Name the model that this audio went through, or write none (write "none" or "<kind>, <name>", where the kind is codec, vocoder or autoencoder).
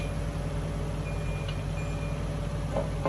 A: none